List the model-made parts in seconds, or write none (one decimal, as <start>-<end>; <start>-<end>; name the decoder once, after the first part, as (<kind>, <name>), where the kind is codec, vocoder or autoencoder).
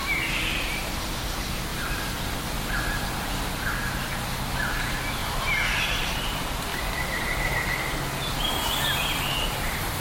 1.7-3.5 (vocoder, BigVGAN v2); 5.2-5.8